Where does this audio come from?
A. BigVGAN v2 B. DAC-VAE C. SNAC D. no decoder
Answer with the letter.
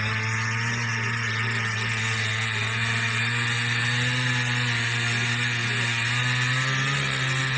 D